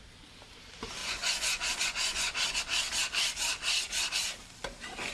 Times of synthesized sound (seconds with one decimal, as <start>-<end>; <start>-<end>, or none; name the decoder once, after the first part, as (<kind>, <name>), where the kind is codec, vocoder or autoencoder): 1.0-2.6 (vocoder, Vocos)